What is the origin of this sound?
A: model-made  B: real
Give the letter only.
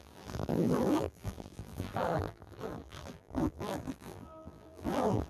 A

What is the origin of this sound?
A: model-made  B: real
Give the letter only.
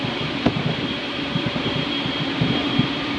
A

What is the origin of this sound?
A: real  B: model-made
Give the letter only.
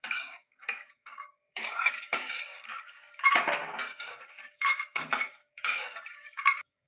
B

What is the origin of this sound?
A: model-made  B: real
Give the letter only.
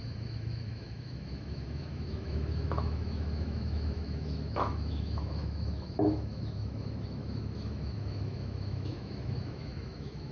A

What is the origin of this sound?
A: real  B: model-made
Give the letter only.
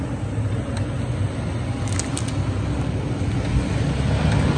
A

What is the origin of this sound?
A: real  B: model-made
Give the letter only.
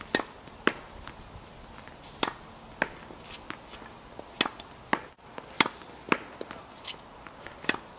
A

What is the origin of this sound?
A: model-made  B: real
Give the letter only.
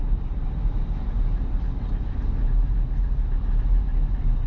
B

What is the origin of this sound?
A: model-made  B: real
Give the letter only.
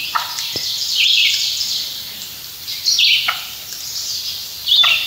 A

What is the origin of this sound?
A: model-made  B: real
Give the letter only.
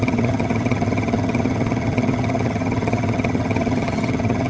A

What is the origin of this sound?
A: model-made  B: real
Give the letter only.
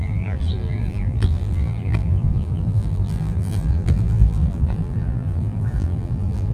A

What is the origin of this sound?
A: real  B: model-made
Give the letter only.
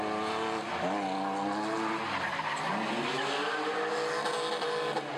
A